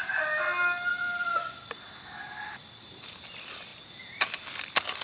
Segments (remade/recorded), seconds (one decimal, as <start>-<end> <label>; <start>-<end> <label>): 0.0-0.9 recorded; 0.9-3.7 remade; 3.7-4.3 recorded; 4.3-5.0 remade